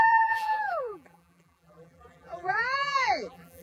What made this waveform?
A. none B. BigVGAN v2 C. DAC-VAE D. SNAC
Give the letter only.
B